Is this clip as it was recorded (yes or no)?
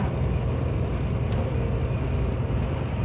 yes